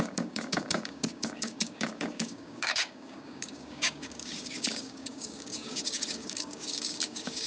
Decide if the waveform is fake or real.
fake